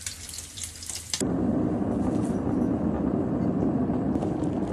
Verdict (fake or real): real